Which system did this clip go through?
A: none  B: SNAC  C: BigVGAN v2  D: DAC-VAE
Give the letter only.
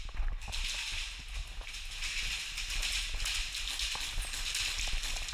A